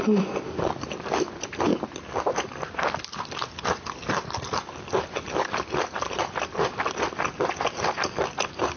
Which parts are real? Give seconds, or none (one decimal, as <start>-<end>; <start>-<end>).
none